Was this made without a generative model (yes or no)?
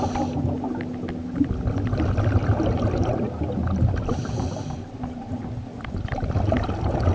yes